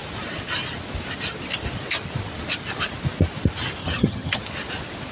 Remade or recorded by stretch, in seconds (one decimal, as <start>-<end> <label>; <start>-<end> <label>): 0.0-3.8 recorded; 3.8-4.4 remade; 4.4-5.1 recorded